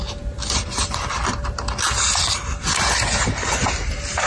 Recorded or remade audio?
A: recorded